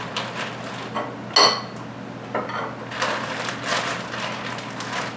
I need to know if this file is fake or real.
real